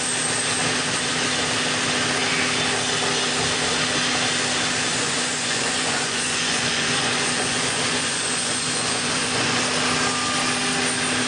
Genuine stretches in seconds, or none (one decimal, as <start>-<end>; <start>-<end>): 0.0-4.9; 9.6-11.3